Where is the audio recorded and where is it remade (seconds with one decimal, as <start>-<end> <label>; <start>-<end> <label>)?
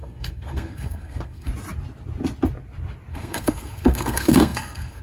0.0-1.5 remade; 1.5-3.1 recorded; 3.1-5.0 remade